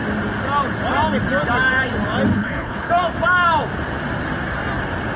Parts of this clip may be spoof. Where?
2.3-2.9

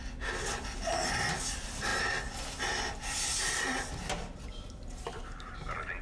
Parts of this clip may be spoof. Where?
none